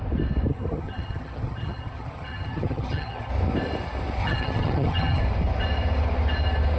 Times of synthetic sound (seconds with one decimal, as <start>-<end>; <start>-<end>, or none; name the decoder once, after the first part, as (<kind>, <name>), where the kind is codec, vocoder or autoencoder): 0.5-3.3 (vocoder, HiFi-GAN); 4.2-5.2